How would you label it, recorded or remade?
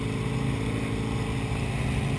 recorded